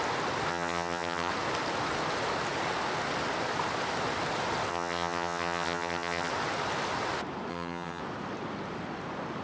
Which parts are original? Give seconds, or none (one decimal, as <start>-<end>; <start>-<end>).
0.0-0.5; 1.3-4.7; 6.3-7.5; 8.0-9.4